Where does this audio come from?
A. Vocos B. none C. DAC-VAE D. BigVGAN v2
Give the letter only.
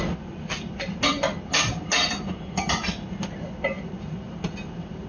B